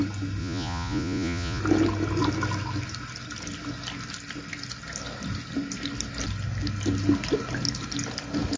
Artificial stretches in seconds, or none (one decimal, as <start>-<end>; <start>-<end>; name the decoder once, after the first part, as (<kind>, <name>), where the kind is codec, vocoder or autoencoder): 0.4-1.6 (vocoder, Vocos)